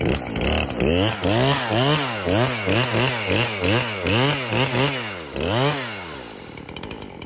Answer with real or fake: real